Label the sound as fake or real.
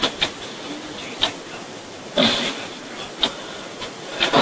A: real